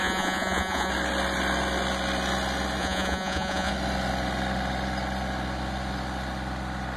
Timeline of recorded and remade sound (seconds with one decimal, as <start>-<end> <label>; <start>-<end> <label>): 0.0-0.9 remade; 0.9-2.8 recorded; 2.8-3.7 remade; 3.7-7.0 recorded